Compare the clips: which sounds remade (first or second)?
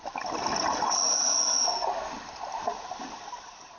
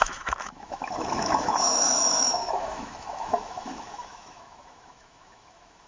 second